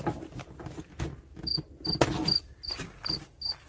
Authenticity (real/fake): real